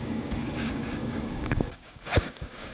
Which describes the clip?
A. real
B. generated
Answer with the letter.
B